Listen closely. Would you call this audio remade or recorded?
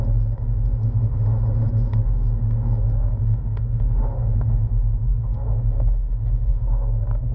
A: remade